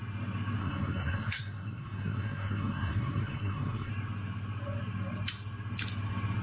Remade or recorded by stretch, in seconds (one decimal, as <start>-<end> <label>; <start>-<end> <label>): 0.0-0.6 recorded; 0.6-3.9 remade; 3.9-6.4 recorded